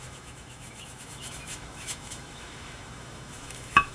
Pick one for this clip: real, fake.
fake